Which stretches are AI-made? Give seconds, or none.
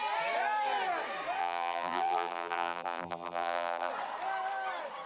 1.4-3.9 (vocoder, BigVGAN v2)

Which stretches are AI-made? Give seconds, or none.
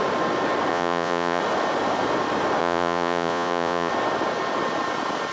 0.7-1.4 (vocoder, Vocos); 2.6-3.9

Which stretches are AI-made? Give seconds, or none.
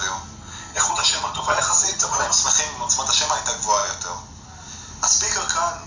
0.7-2.3 (vocoder, HiFi-GAN)